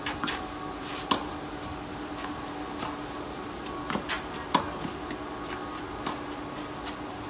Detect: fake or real real